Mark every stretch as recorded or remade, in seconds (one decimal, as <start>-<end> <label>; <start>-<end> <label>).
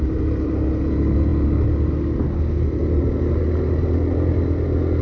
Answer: 0.0-5.0 recorded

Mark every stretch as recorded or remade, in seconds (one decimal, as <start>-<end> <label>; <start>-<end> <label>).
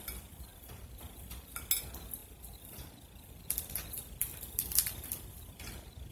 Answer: 0.0-0.5 recorded; 0.5-1.5 remade; 1.5-2.2 recorded; 2.2-6.1 remade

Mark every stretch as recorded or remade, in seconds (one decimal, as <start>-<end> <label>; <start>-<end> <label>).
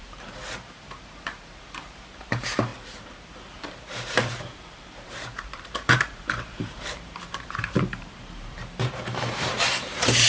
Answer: 0.0-10.3 remade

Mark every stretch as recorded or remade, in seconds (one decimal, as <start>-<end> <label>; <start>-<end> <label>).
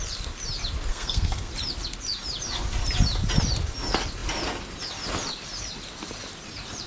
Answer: 0.0-0.9 recorded; 0.9-1.5 remade; 1.5-6.9 recorded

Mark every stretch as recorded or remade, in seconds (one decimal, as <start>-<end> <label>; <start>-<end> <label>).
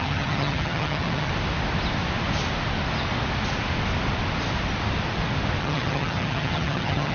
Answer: 0.0-1.3 remade; 1.3-5.6 recorded; 5.6-7.1 remade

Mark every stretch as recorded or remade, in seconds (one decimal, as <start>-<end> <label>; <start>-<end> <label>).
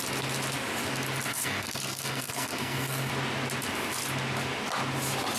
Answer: 0.0-1.3 recorded; 1.3-3.1 remade; 3.1-5.4 recorded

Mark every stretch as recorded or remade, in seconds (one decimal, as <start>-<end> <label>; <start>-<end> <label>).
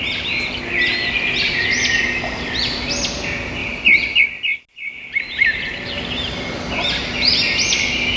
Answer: 0.0-3.6 recorded; 3.6-4.2 remade; 4.2-8.2 recorded